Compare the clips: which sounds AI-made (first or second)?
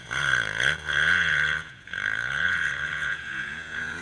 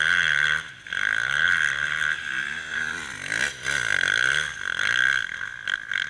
first